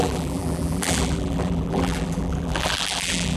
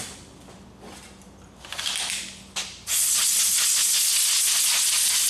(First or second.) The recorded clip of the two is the second